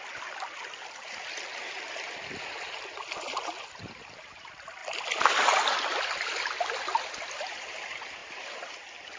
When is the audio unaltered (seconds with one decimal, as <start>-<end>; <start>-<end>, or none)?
0.0-9.2